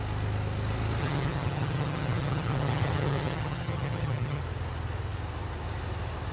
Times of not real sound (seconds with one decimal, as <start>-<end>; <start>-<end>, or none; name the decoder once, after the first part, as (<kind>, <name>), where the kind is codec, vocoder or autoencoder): 1.0-4.4 (vocoder, HiFi-GAN)